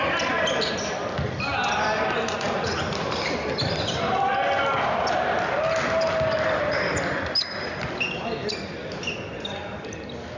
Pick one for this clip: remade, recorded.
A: recorded